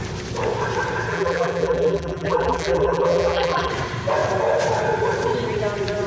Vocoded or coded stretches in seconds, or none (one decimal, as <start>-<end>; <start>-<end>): 1.1-3.7